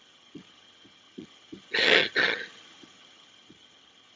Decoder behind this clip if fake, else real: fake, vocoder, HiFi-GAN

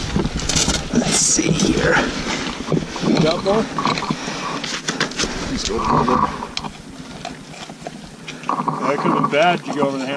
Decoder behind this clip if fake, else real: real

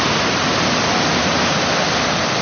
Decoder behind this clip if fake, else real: real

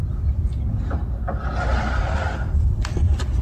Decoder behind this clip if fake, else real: real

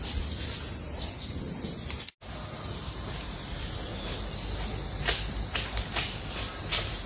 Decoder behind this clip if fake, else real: real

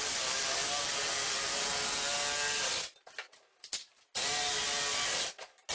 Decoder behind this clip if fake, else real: real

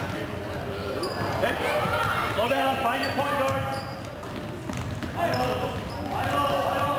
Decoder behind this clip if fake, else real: real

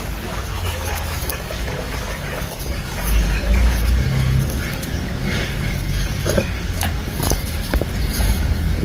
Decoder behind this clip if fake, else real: fake, codec, DAC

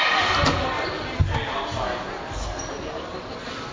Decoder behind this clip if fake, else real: real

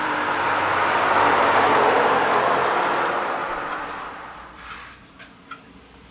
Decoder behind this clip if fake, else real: fake, vocoder, BigVGAN v2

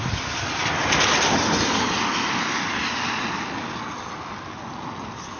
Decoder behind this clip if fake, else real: real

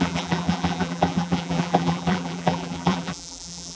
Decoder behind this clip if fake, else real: fake, vocoder, BigVGAN v2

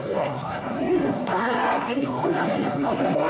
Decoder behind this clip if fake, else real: fake, codec, SNAC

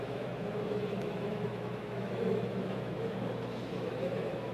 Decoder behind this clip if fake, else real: fake, autoencoder, DAC-VAE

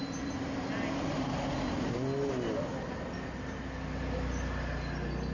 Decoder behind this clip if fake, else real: real